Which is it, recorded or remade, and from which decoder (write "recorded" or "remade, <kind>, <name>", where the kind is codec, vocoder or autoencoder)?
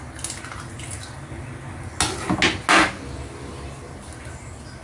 recorded